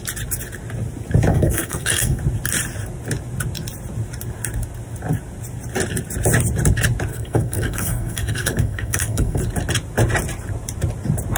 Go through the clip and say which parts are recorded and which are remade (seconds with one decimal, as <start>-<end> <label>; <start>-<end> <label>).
0.0-1.3 recorded; 1.3-2.2 remade; 2.2-7.1 recorded; 7.1-9.4 remade; 9.4-11.4 recorded